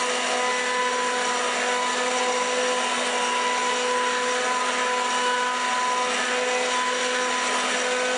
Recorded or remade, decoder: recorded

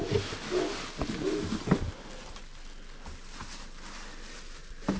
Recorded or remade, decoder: recorded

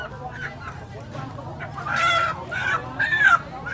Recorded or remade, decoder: recorded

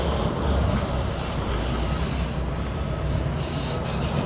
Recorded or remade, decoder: recorded